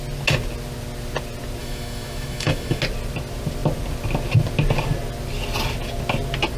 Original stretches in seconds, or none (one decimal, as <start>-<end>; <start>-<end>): 0.0-1.6; 2.8-6.6